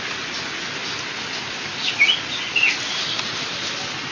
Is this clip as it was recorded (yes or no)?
yes